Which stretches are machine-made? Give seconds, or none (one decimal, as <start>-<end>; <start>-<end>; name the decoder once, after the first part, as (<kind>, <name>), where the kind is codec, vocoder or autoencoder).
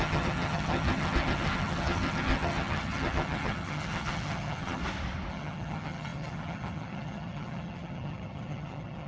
0.0-4.8 (vocoder, HiFi-GAN); 5.3-9.1